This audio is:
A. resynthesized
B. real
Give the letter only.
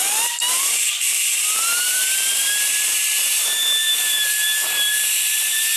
A